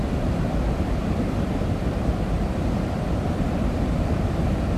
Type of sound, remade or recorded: remade